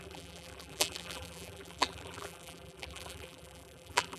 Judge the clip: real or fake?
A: fake